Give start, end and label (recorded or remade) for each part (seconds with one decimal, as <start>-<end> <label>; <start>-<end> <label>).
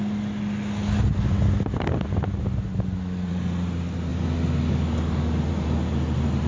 0.0-6.5 recorded